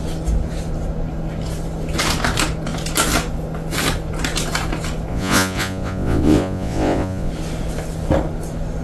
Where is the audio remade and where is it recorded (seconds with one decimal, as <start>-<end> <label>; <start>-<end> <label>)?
0.0-5.1 recorded; 5.1-7.3 remade; 7.3-8.8 recorded